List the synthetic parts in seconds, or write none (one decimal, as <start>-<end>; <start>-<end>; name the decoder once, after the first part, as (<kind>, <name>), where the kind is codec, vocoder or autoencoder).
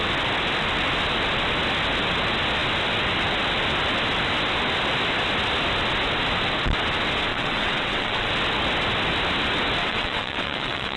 7.3-8.3 (vocoder, WaveNeXt); 9.8-11.0